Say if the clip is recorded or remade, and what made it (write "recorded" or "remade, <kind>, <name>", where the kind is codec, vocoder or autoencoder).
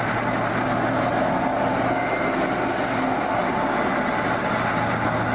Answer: recorded